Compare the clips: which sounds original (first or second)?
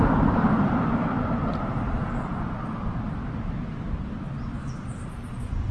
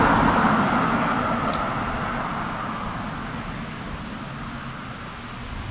second